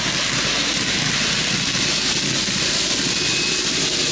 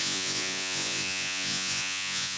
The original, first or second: first